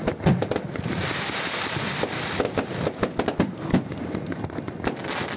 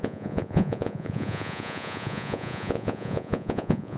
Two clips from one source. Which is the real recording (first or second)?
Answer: first